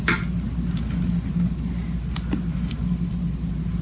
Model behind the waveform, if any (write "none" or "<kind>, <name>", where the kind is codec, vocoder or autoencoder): none